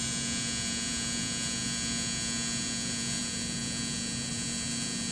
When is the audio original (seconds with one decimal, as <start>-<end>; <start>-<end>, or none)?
0.0-5.1